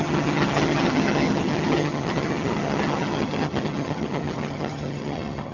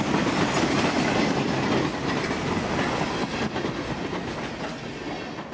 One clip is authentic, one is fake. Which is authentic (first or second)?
second